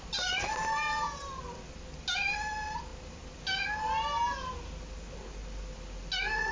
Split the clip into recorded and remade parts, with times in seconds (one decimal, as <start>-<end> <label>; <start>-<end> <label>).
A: 0.0-6.5 recorded